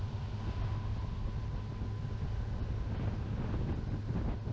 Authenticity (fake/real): real